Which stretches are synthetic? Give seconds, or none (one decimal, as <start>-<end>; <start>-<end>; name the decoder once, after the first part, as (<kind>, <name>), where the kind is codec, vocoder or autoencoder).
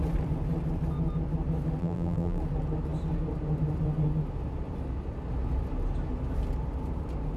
1.8-2.4 (vocoder, BigVGAN v2)